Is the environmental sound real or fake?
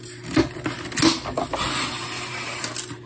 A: real